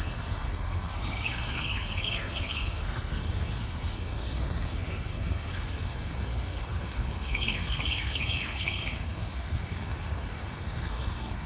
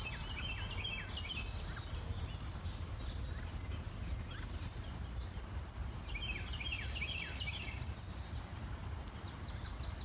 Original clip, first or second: second